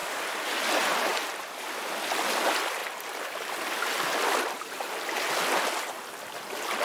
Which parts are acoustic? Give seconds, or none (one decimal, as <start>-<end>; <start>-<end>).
0.0-6.8